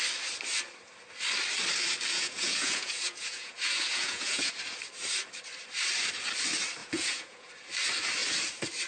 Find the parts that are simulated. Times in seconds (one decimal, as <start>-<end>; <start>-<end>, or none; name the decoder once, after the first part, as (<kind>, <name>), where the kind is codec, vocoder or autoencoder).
2.1-4.5 (vocoder, Vocos); 6.8-7.5